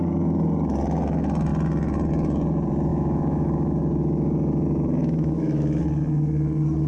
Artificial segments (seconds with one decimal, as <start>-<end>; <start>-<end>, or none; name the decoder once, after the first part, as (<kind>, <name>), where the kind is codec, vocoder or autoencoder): 2.9-3.8 (autoencoder, DAC-VAE); 5.0-5.8